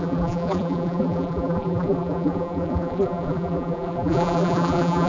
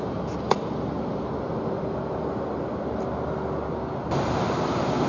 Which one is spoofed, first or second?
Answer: first